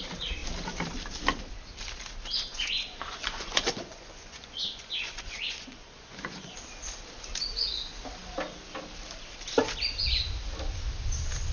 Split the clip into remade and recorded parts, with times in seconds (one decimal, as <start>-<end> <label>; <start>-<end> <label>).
0.0-2.5 recorded; 2.5-6.6 remade; 6.6-11.5 recorded